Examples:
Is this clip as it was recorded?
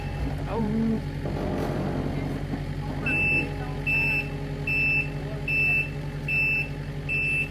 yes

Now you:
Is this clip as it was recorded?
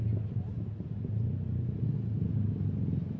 yes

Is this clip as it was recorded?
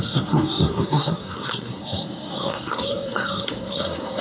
no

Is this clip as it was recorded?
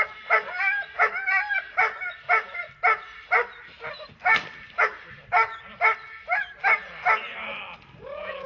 yes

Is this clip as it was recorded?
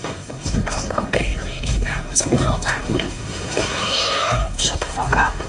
no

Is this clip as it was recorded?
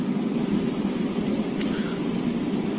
yes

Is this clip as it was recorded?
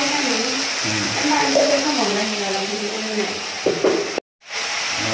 yes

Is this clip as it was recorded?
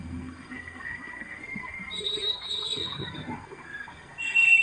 no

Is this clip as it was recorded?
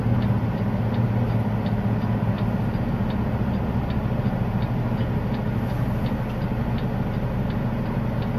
yes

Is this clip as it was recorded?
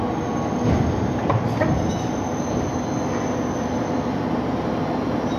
yes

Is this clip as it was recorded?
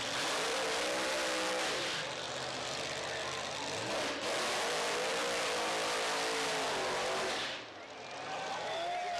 yes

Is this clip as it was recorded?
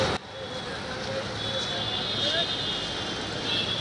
yes